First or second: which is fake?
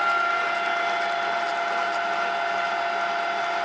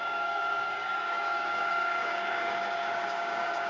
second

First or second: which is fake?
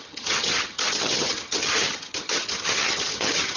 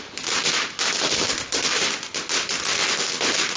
first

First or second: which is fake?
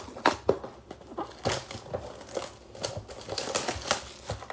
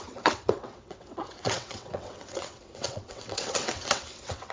second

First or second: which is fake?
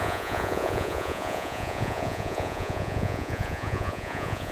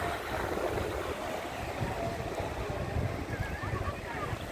first